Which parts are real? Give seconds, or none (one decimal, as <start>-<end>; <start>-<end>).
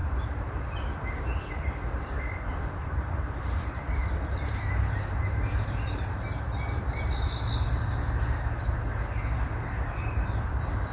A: 0.6-2.8; 6.1-10.9